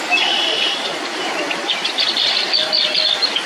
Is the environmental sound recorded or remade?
recorded